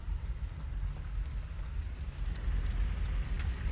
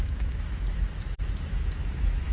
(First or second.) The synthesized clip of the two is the second